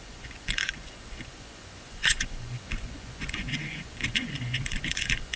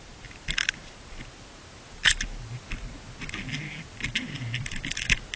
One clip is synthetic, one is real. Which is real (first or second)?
second